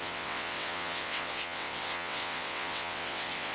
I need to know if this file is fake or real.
fake